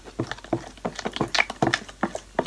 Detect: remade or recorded recorded